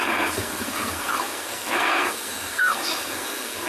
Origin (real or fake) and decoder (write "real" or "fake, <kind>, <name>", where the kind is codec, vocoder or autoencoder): fake, codec, SNAC